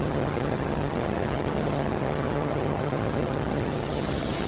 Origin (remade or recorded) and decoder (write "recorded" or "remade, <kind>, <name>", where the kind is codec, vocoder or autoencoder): remade, vocoder, HiFi-GAN